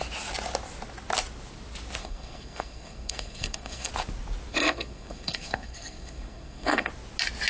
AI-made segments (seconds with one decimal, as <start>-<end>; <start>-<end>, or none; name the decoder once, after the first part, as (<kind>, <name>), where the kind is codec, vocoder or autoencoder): 2.0-3.9 (codec, SNAC); 4.5-6.9